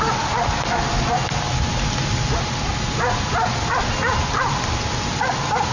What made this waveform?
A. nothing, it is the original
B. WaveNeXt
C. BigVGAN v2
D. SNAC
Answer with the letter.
A